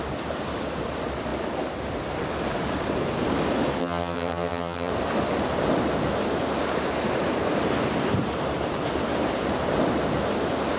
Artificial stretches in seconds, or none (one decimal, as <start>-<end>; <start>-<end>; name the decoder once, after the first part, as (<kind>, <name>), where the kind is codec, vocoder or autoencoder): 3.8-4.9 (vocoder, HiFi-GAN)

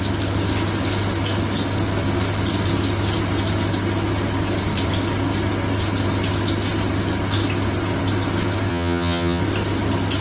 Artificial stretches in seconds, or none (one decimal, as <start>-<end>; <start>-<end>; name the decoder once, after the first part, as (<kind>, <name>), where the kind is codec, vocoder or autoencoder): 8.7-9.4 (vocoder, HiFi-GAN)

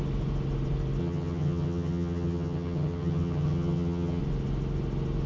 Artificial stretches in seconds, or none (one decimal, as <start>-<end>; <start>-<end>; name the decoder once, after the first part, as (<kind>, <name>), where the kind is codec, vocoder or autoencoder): 1.0-4.2 (vocoder, HiFi-GAN)

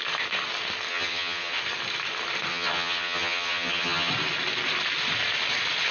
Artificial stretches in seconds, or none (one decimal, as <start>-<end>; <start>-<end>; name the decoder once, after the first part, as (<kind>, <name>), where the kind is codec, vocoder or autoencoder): 0.9-1.6 (vocoder, HiFi-GAN); 2.5-4.1

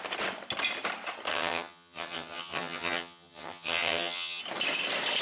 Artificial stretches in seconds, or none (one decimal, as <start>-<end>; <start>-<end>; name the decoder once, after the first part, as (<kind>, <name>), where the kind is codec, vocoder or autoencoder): 1.3-4.4 (vocoder, HiFi-GAN)

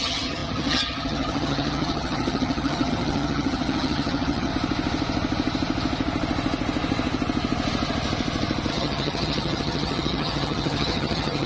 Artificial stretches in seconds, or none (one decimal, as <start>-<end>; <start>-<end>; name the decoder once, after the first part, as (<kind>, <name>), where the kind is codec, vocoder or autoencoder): 0.0-4.5 (vocoder, HiFi-GAN); 8.7-11.5